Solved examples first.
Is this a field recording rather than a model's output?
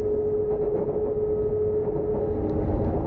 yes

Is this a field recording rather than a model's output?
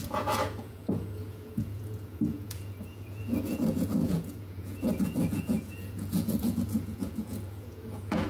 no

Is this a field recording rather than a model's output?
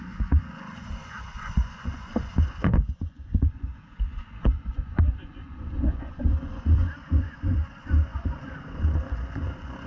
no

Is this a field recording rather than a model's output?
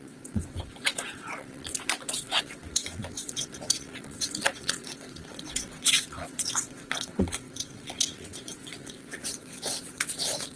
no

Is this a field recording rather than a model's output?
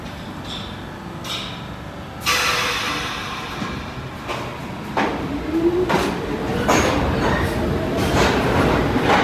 yes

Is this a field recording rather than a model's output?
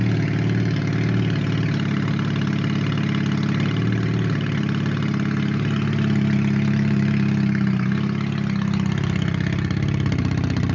yes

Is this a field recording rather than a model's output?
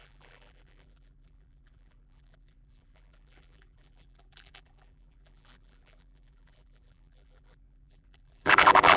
no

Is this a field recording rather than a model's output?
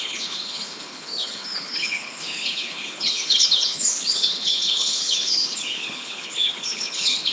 no